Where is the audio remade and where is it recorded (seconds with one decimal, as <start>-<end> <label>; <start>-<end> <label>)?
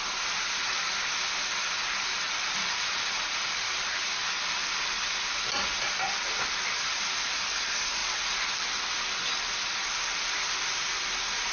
0.0-11.5 recorded